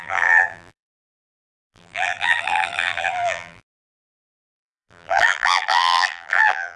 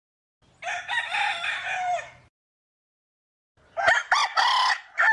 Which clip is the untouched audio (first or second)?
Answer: second